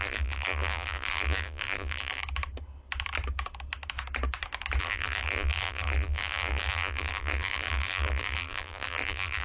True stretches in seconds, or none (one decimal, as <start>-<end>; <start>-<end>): 2.2-4.8